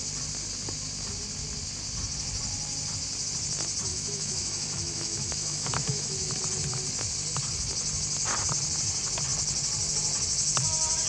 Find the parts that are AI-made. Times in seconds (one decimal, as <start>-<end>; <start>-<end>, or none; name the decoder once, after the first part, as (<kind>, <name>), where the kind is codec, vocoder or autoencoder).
3.9-6.4 (autoencoder, DAC-VAE)